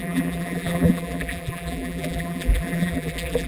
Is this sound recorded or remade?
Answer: remade